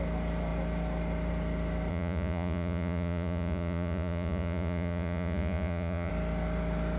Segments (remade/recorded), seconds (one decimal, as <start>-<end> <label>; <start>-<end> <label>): 0.0-1.9 recorded; 1.9-6.1 remade; 6.1-7.0 recorded